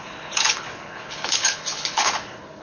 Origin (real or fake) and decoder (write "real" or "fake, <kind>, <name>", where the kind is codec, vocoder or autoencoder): fake, codec, HILCodec